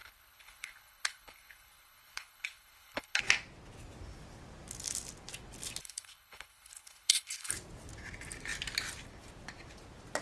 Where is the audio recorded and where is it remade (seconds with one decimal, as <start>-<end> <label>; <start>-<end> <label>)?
0.0-3.2 remade; 3.2-5.8 recorded; 5.8-7.5 remade; 7.5-10.2 recorded